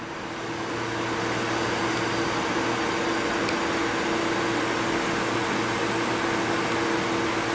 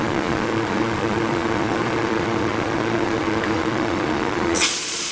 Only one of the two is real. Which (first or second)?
first